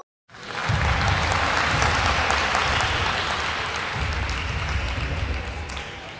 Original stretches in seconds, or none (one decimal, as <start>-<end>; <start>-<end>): 0.0-6.2